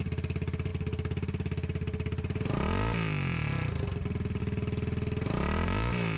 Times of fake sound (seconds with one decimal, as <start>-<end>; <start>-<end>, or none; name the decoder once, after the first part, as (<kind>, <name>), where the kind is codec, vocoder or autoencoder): none

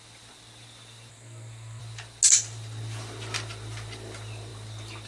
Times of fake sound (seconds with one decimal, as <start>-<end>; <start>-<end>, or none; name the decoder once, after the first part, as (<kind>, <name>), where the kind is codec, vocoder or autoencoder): 1.1-1.8 (codec, SNAC)